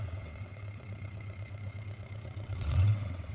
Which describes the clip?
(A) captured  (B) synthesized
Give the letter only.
B